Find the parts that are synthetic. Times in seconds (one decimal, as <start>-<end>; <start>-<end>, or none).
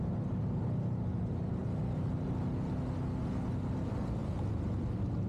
1.6-2.3